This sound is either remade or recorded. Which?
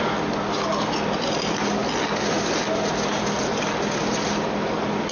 recorded